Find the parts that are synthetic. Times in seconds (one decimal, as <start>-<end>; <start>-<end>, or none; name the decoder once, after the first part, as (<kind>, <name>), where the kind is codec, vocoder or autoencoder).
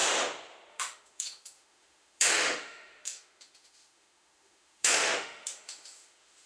0.7-6.5 (autoencoder, DAC-VAE)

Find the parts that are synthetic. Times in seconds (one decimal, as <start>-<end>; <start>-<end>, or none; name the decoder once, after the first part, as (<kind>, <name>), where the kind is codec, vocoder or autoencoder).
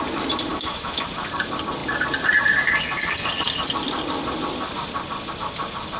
0.5-1.0 (autoencoder, DAC-VAE)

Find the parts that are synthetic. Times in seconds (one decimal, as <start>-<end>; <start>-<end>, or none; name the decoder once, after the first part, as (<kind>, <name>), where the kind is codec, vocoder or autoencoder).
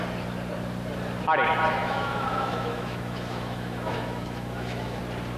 1.8-5.0 (autoencoder, DAC-VAE)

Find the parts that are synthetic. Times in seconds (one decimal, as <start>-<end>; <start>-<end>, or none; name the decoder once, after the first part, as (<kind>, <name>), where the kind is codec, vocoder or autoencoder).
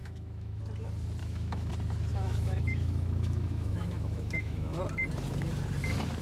0.0-0.6 (autoencoder, DAC-VAE); 1.2-1.7; 2.1-4.8